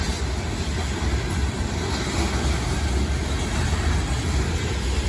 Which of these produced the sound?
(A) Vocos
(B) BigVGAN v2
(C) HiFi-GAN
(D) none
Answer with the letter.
D